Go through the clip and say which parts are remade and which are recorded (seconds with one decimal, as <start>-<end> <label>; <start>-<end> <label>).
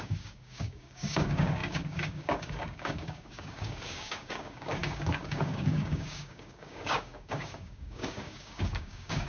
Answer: 0.0-9.3 remade